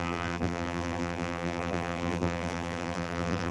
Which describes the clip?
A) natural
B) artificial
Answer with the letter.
B